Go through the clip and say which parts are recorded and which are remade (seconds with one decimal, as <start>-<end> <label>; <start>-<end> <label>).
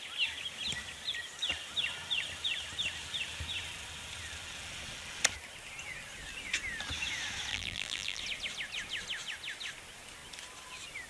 0.0-7.5 recorded; 7.5-8.2 remade; 8.2-11.1 recorded